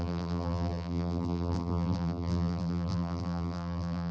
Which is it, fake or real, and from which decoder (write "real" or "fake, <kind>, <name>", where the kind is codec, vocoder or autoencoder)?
fake, vocoder, BigVGAN v2